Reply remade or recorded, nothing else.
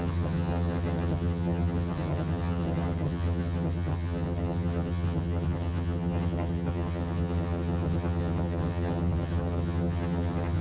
remade